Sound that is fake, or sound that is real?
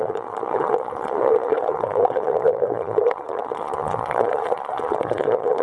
fake